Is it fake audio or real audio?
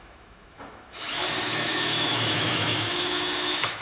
fake